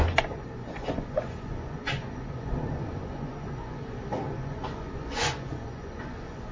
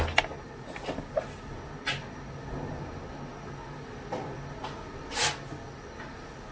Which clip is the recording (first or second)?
second